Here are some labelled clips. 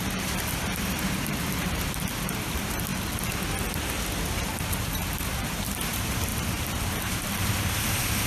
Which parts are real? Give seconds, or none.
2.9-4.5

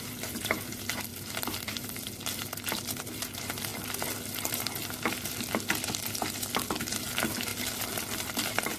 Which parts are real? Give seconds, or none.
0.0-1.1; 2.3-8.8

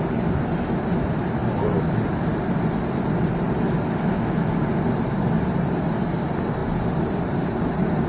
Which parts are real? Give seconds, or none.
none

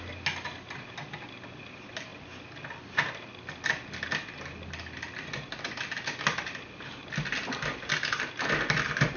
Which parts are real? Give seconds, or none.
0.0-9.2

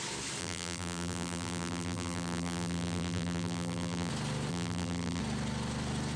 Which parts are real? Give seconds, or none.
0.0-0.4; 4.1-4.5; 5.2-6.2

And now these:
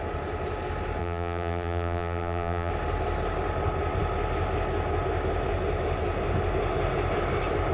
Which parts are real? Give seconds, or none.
0.0-1.0; 2.7-7.7

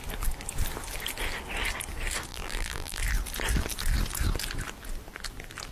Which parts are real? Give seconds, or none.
0.0-2.3; 3.0-5.7

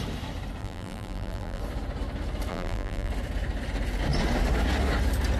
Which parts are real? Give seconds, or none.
0.0-0.6; 1.6-2.5; 3.1-5.4